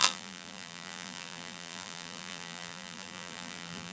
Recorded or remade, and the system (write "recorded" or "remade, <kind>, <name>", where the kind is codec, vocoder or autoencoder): remade, vocoder, BigVGAN v2